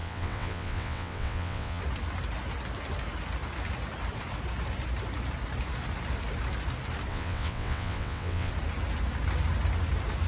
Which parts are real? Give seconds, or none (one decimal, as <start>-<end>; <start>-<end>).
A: 1.8-7.1; 8.5-10.3